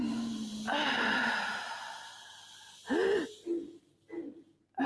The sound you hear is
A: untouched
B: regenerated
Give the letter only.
A